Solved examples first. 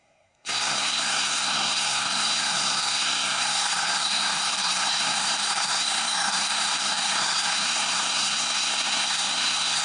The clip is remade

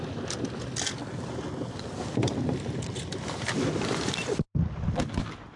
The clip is recorded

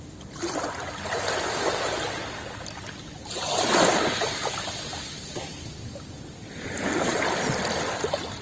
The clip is recorded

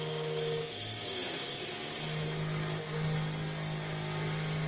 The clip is recorded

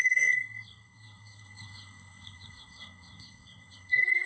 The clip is remade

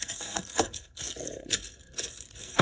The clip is remade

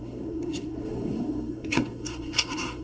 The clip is remade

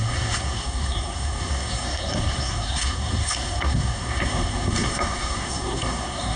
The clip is remade